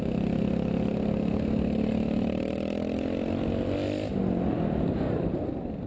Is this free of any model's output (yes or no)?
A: yes